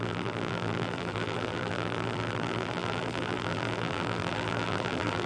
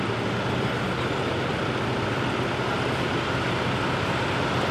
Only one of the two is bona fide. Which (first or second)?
second